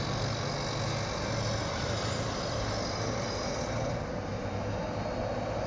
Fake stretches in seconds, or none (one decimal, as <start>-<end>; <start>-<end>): 1.6-3.5